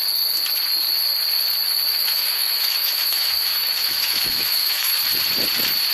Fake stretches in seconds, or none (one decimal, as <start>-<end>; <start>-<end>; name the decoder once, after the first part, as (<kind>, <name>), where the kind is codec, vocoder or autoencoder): 1.9-4.9 (autoencoder, DAC-VAE)